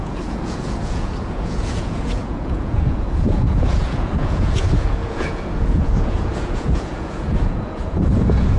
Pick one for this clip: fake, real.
fake